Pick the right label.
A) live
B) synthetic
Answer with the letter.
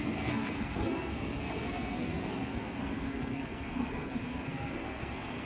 B